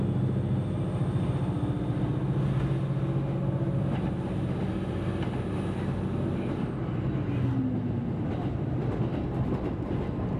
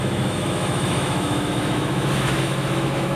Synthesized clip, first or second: second